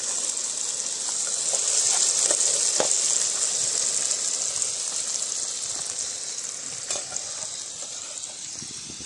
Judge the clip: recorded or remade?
recorded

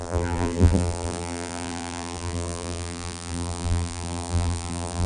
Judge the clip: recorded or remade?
remade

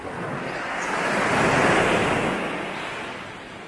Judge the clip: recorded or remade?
recorded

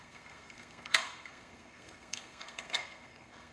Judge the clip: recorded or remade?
remade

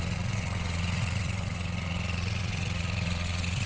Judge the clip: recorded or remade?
remade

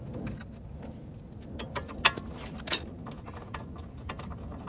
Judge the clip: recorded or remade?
recorded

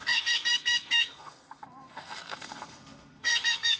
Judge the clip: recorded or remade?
remade